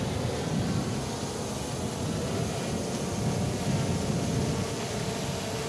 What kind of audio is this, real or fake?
real